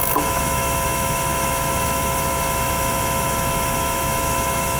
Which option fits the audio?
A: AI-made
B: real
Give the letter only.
A